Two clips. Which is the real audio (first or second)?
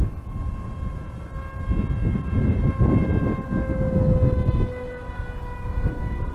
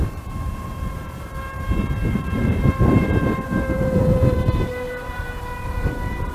first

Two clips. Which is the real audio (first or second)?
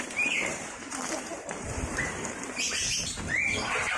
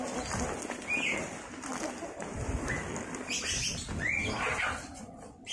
second